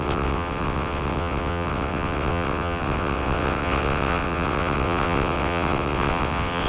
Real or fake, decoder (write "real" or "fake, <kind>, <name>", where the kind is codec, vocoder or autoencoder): fake, vocoder, WaveNeXt